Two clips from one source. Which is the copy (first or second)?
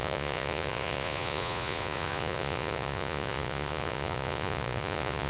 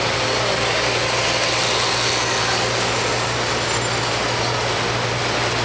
first